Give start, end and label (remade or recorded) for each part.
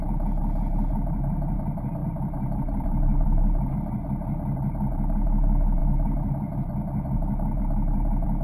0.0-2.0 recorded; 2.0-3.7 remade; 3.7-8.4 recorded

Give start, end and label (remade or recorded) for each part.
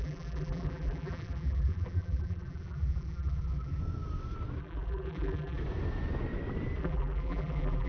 0.0-3.8 remade; 3.8-4.6 recorded; 4.6-5.6 remade; 5.6-6.8 recorded; 6.8-7.9 remade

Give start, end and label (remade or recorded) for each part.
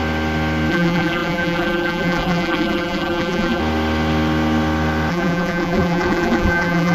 0.0-0.7 recorded; 0.7-3.6 remade; 3.6-5.1 recorded; 5.1-6.9 remade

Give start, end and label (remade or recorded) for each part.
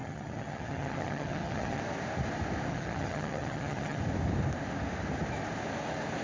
0.0-1.8 remade; 1.8-2.7 recorded; 2.7-4.0 remade; 4.0-6.2 recorded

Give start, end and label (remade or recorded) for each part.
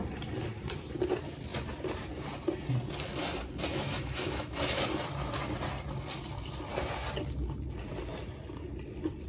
0.0-3.7 recorded; 3.7-4.8 remade; 4.8-9.3 recorded